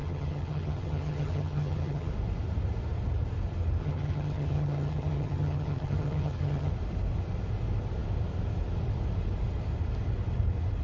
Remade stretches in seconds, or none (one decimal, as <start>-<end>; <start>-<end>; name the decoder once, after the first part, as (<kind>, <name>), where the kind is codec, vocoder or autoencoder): 0.0-2.1 (vocoder, HiFi-GAN); 3.8-6.7